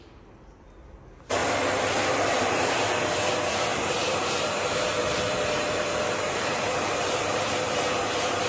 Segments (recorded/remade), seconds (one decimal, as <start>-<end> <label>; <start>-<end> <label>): 0.0-3.7 recorded; 3.7-7.8 remade; 7.8-8.5 recorded